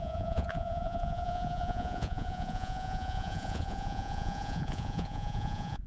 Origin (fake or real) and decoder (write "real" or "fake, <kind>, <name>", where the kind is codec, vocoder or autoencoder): fake, vocoder, Vocos